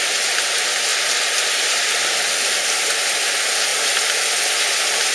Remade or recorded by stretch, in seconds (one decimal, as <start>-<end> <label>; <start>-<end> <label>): 0.0-5.1 recorded